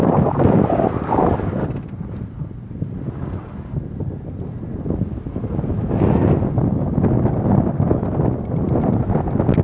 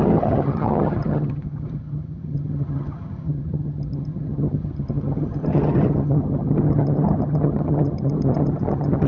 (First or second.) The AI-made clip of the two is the second